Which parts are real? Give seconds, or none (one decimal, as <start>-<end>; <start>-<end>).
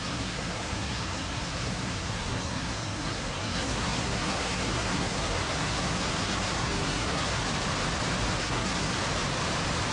7.5-8.4; 9.0-9.9